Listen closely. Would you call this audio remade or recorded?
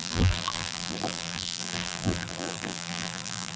remade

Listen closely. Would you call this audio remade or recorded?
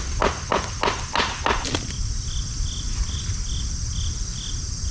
recorded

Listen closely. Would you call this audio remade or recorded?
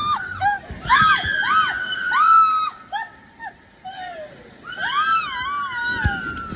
recorded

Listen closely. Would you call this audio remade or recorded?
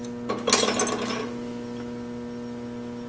recorded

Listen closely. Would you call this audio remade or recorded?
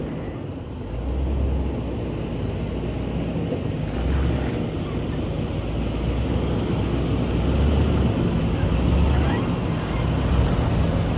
recorded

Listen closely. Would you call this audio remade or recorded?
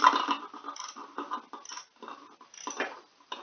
recorded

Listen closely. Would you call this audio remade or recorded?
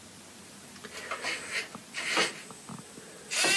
recorded